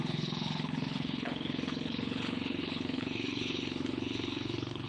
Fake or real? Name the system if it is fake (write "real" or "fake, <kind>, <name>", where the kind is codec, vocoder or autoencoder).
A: fake, codec, HILCodec